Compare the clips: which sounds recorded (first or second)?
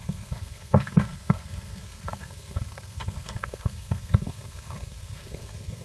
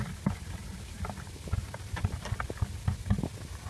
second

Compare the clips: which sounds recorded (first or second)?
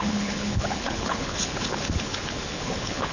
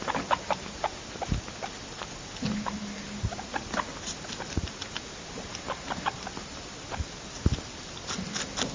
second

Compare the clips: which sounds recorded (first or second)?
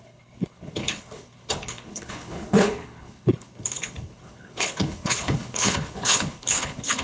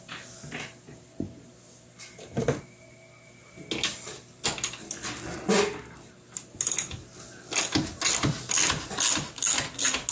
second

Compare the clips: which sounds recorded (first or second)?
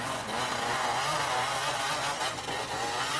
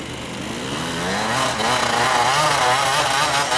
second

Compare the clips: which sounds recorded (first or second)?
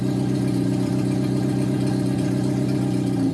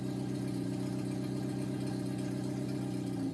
second